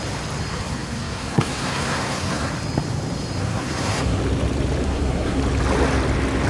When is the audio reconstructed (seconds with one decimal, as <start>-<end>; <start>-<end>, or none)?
0.5-2.5; 3.4-4.2; 4.8-5.4